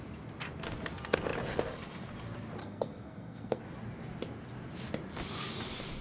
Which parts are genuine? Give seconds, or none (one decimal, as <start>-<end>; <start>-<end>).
0.0-2.6; 3.6-6.0